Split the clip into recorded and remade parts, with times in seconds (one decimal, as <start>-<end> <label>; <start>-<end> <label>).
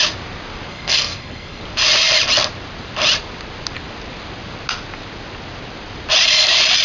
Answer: 0.0-0.7 recorded; 0.7-1.6 remade; 1.6-6.8 recorded